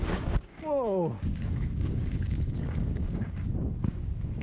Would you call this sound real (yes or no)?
no